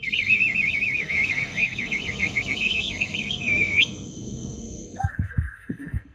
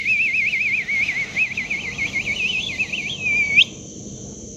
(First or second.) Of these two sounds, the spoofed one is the first